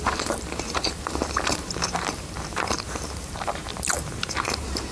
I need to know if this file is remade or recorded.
remade